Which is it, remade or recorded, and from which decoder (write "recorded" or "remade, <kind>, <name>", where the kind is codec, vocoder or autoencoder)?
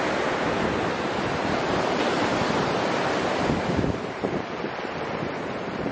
remade, vocoder, BigVGAN v2